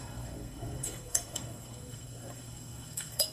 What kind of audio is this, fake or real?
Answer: fake